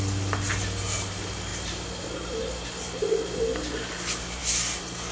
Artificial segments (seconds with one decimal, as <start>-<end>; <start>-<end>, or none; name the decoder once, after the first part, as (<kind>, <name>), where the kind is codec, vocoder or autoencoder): none